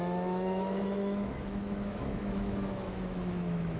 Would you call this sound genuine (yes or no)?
no